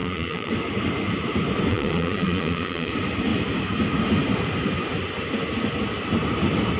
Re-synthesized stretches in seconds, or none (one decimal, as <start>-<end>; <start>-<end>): 0.0-0.5; 1.7-2.9